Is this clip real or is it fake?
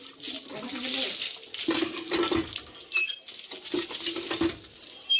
real